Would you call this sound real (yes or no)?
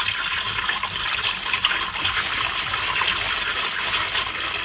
no